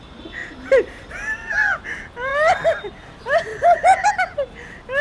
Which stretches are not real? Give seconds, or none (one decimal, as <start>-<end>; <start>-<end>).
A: 0.4-1.1; 3.5-4.1